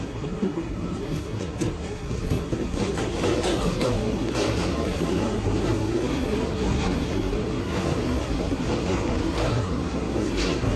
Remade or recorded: remade